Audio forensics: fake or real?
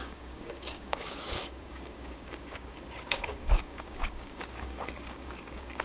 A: fake